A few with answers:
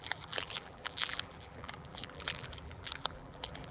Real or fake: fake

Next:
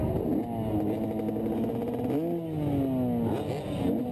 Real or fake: real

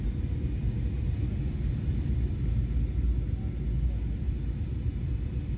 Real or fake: real